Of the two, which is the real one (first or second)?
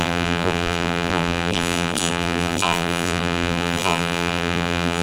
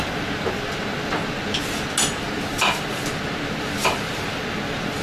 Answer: second